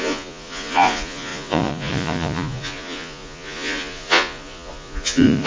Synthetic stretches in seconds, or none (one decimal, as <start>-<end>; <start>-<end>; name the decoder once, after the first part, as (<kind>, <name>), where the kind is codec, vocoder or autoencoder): 0.0-5.5 (vocoder, Vocos)